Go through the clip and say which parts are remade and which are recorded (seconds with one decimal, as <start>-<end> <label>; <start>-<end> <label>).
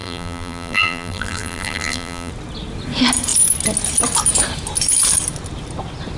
0.0-2.3 remade; 2.3-6.2 recorded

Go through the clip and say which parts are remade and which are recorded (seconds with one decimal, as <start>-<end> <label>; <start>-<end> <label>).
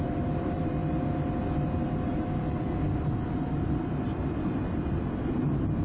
0.0-0.8 remade; 0.8-1.5 recorded; 1.5-5.8 remade